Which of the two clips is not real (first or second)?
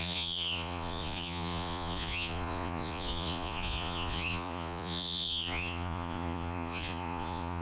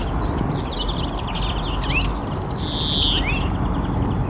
first